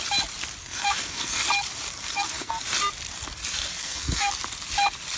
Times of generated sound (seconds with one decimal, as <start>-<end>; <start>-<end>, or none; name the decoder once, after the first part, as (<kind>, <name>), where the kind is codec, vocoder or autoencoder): 0.6-1.4 (codec, SNAC); 1.9-2.5; 3.8-4.3